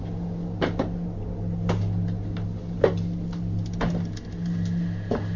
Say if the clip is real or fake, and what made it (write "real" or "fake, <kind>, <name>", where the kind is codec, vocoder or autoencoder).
real